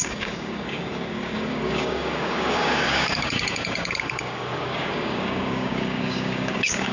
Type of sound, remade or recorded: remade